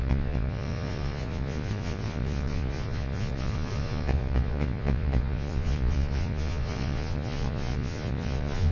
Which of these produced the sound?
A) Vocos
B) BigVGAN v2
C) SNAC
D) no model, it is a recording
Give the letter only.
A